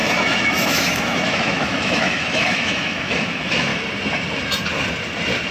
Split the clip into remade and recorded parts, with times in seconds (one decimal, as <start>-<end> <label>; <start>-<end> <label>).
0.0-3.7 remade; 3.7-5.5 recorded